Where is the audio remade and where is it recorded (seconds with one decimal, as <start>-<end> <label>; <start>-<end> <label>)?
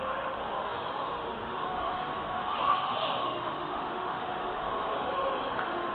0.0-5.9 remade